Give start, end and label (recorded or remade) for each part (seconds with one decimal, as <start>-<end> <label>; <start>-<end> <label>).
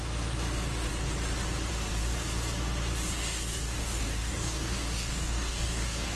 0.0-3.5 recorded; 3.5-6.2 remade